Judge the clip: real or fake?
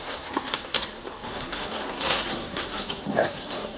fake